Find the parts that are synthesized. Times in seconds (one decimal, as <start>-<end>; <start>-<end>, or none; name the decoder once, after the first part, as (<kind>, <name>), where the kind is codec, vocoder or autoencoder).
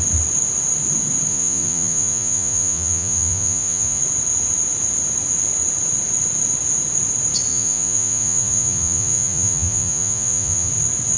1.3-4.0 (vocoder, Vocos); 7.5-10.7